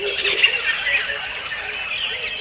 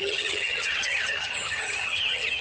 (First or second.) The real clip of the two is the first